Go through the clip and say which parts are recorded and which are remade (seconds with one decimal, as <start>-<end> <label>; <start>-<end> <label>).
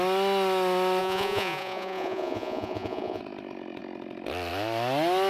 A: 0.0-1.0 recorded; 1.0-3.2 remade; 3.2-5.3 recorded